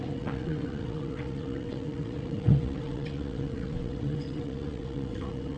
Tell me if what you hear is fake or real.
fake